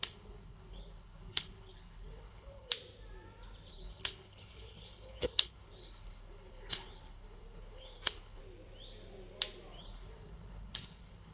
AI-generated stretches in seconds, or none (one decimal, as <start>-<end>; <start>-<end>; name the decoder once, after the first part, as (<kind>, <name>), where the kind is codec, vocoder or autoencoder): 0.0-2.7 (codec, HILCodec); 3.7-8.4; 9.8-11.3